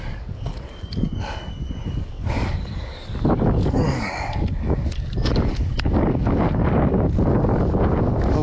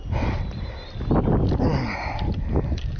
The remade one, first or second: first